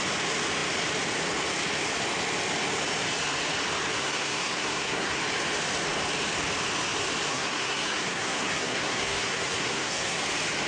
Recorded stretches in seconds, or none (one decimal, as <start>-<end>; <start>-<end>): 0.0-4.0; 5.2-7.3; 10.2-10.7